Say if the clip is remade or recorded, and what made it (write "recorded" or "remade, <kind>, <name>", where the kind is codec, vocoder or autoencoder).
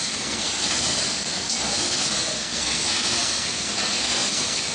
remade, codec, SNAC